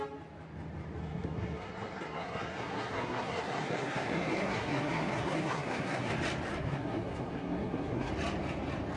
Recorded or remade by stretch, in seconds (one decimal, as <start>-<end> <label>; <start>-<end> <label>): 0.0-1.0 recorded; 1.0-6.1 remade; 6.1-6.5 recorded; 6.5-8.1 remade; 8.1-9.0 recorded

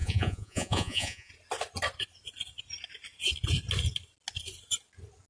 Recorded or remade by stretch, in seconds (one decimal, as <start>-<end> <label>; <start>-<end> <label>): 0.0-1.3 remade; 1.3-5.3 recorded

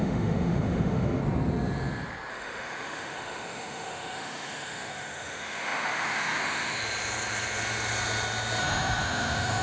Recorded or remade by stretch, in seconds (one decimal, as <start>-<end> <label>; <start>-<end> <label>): 0.0-1.2 remade; 1.2-2.3 recorded; 2.3-6.8 remade; 6.8-8.6 recorded; 8.6-9.6 remade

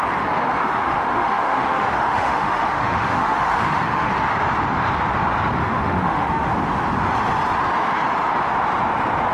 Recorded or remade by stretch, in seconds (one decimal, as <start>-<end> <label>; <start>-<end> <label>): 0.0-0.6 recorded; 0.6-4.1 remade; 4.1-5.6 recorded; 5.6-6.5 remade; 6.5-9.3 recorded

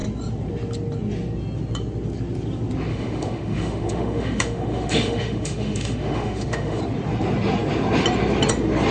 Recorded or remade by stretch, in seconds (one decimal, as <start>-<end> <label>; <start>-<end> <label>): 0.0-2.9 recorded; 2.9-6.8 remade; 6.8-8.9 recorded